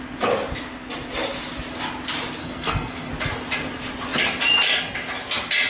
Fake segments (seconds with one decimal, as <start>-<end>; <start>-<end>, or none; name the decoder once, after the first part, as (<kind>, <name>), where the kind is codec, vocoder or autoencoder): 2.4-3.1 (codec, SNAC)